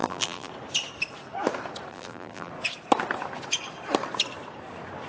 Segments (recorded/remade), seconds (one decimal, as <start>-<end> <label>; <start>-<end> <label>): 0.0-0.5 remade; 0.5-1.9 recorded; 1.9-2.5 remade; 2.5-5.1 recorded